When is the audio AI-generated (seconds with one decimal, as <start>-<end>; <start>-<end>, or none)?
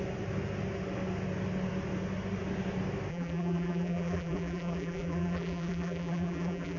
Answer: 3.1-6.8